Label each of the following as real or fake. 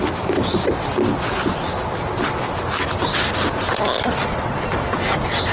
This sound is real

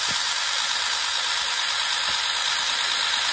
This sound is real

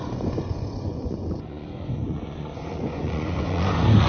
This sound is fake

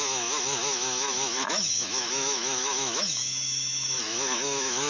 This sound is fake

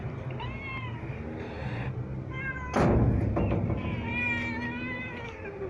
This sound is real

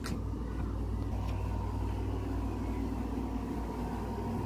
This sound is real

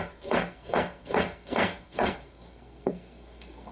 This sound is fake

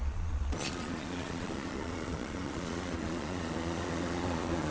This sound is fake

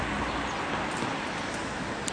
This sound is real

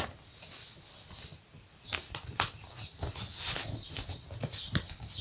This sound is real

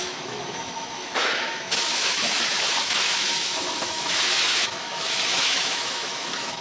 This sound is fake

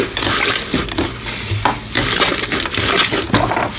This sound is real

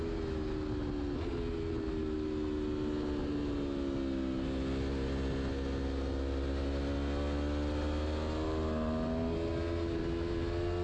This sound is real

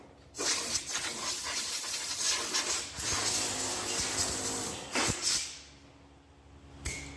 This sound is real